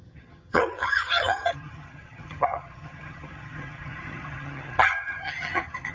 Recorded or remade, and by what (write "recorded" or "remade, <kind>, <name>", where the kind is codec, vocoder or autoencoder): remade, vocoder, HiFi-GAN